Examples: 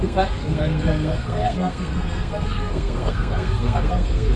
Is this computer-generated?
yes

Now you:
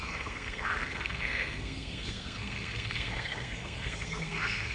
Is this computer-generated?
yes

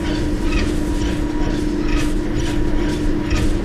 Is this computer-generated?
no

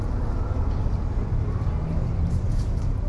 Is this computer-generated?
no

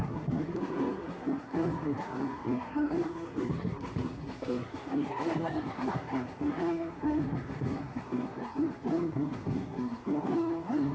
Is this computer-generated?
yes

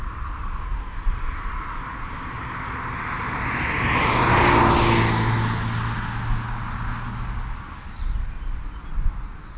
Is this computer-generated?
no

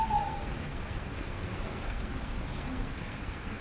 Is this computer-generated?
yes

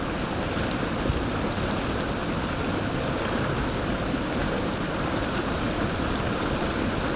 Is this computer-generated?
no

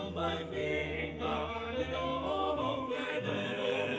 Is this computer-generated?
yes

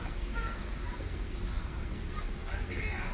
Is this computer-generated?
yes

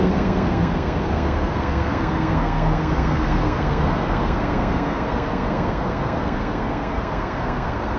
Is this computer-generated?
yes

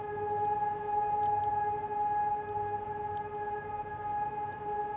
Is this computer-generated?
no